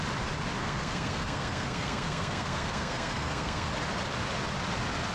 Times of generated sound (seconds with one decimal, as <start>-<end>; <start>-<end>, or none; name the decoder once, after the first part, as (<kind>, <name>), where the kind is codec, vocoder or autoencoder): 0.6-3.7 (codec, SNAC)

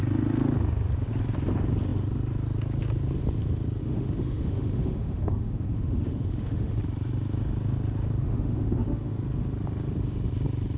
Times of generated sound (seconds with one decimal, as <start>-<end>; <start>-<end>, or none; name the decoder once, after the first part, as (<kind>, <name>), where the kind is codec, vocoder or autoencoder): 3.8-6.8 (autoencoder, DAC-VAE); 8.2-9.1

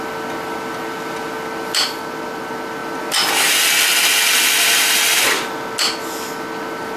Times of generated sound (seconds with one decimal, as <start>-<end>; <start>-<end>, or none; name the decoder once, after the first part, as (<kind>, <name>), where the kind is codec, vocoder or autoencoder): none